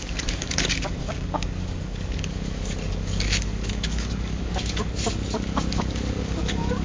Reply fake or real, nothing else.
fake